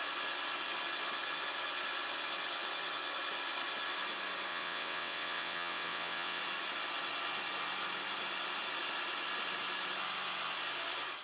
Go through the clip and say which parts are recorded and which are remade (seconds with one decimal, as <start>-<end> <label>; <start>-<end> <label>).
0.0-4.5 recorded; 4.5-6.4 remade; 6.4-11.2 recorded

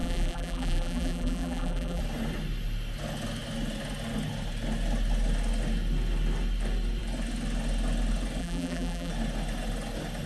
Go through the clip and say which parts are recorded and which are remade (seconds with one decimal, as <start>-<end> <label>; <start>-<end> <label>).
0.0-2.0 remade; 2.0-8.4 recorded; 8.4-9.1 remade; 9.1-10.3 recorded

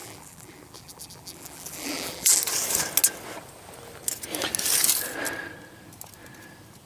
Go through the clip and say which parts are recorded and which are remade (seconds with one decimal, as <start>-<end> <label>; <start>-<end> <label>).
0.0-2.4 remade; 2.4-6.9 recorded

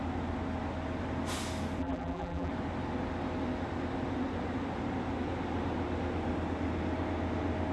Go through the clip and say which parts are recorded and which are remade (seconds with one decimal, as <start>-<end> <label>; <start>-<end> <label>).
0.0-1.8 recorded; 1.8-2.5 remade; 2.5-7.7 recorded

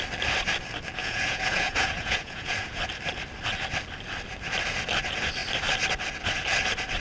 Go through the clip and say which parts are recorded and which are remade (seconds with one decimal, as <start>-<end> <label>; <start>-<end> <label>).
0.0-1.0 recorded; 1.0-2.8 remade; 2.8-7.0 recorded